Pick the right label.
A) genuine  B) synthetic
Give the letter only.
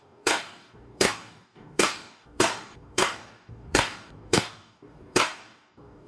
B